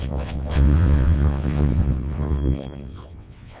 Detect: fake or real fake